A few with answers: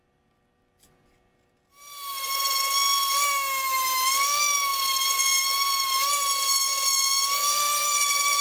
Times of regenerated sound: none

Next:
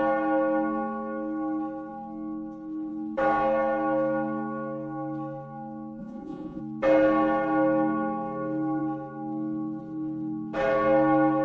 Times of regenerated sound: 6.0-6.6 (vocoder, Vocos)

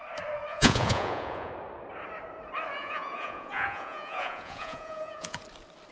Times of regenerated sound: 0.5-1.5 (vocoder, Vocos); 2.8-5.4

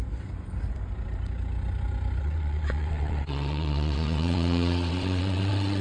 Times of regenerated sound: 2.2-5.8 (vocoder, WaveNeXt)

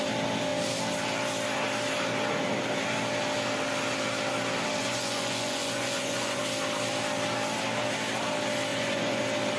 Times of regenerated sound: 4.8-6.4 (vocoder, Vocos); 8.7-9.2